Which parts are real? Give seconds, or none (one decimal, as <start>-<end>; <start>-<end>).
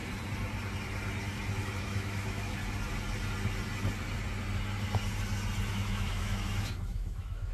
0.0-1.8; 2.6-5.7